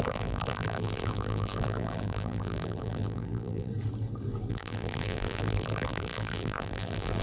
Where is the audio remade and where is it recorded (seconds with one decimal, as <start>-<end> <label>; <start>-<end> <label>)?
0.0-3.7 remade; 3.7-4.5 recorded; 4.5-7.2 remade